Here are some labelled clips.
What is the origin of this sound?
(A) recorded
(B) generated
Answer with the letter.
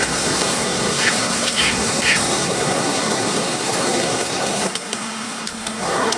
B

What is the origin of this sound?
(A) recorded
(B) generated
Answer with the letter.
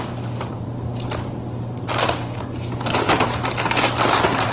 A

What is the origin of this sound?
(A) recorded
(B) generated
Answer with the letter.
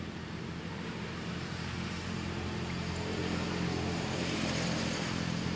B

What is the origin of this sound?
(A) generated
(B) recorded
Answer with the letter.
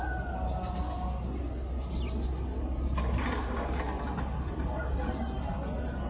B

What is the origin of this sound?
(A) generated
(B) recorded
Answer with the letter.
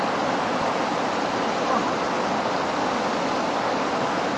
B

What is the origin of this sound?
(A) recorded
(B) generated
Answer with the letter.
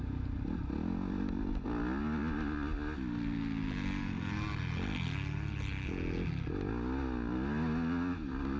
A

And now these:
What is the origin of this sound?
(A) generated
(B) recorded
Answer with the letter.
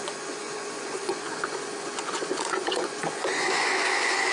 A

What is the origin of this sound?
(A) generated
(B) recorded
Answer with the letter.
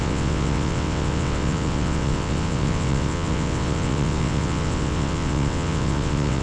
A